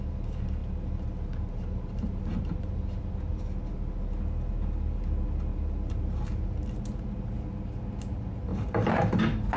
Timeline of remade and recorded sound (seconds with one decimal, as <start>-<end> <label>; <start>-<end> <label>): 0.0-0.6 recorded; 0.6-2.7 remade; 2.7-5.5 recorded; 5.5-6.2 remade; 6.2-8.5 recorded; 8.5-9.2 remade; 9.2-9.6 recorded

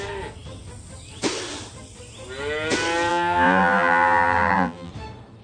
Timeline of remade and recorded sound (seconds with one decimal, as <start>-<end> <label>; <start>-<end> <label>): 0.0-3.1 recorded; 3.1-4.9 remade; 4.9-5.4 recorded

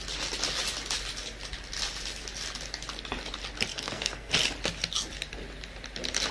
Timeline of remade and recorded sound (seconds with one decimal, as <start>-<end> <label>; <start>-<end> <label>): 0.0-3.7 recorded; 3.7-4.3 remade; 4.3-6.3 recorded

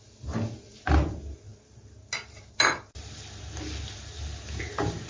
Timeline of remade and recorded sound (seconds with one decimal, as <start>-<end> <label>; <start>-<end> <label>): 0.0-5.1 recorded

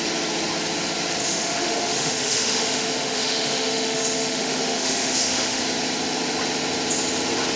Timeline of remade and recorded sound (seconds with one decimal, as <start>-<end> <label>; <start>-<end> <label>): 0.0-1.2 recorded; 1.2-5.6 remade; 5.6-7.6 recorded

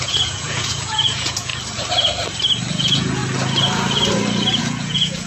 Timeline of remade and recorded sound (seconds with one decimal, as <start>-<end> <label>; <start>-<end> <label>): 0.0-1.5 remade; 1.5-2.7 recorded; 2.7-3.2 remade; 3.2-4.6 recorded; 4.6-5.3 remade

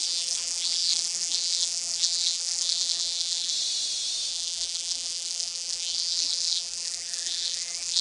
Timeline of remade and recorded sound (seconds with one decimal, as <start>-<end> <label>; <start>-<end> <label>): 0.0-3.5 remade; 3.5-4.3 recorded; 4.3-8.0 remade

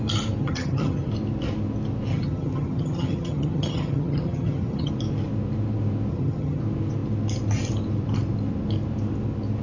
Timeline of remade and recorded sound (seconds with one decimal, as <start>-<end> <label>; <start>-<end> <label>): 0.0-0.4 recorded; 0.4-1.1 remade; 1.1-2.1 recorded; 2.1-4.9 remade; 4.9-6.1 recorded; 6.1-6.6 remade; 6.6-9.6 recorded